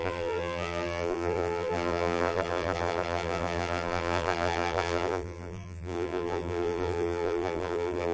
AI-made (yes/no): yes